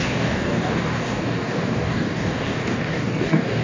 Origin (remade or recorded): remade